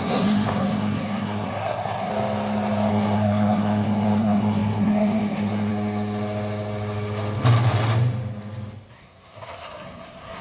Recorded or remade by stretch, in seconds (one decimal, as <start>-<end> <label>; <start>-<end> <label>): 0.0-2.1 remade; 2.1-2.9 recorded; 2.9-5.7 remade; 5.7-8.9 recorded; 8.9-10.4 remade